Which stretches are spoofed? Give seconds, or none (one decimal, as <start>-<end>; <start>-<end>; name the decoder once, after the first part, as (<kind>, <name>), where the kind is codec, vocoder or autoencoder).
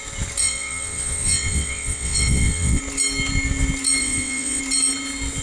0.4-2.8 (vocoder, WaveNeXt); 4.0-4.6